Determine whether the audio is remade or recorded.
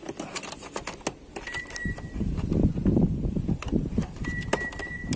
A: recorded